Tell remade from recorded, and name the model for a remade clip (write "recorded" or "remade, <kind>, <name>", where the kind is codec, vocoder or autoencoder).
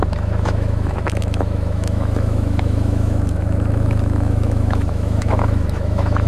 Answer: remade, autoencoder, DAC-VAE